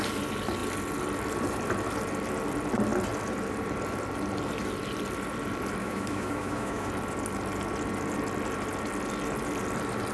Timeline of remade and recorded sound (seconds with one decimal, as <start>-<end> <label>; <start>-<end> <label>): 0.0-5.8 recorded; 5.8-6.9 remade; 6.9-10.1 recorded